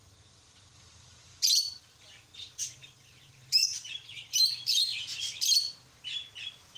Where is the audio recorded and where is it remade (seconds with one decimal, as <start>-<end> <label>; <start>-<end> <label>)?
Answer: 0.0-2.3 remade; 2.3-2.8 recorded; 2.8-4.9 remade; 4.9-6.8 recorded